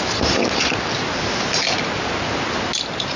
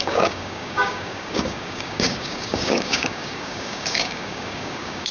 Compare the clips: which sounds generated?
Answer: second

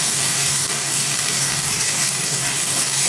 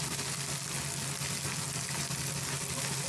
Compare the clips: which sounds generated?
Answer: first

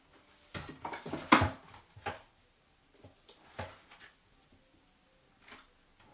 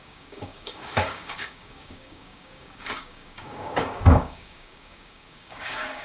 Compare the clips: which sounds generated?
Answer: second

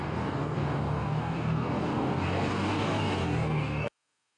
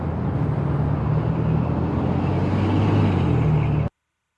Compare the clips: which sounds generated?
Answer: first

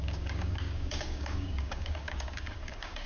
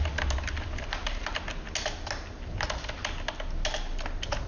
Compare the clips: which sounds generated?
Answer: first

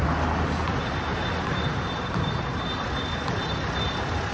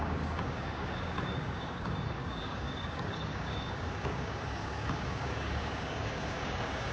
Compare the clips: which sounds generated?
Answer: second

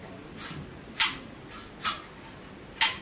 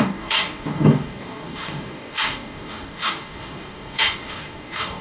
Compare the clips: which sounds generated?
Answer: second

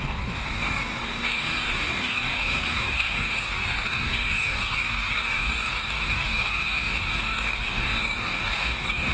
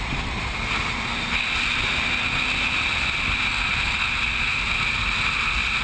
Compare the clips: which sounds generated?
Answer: first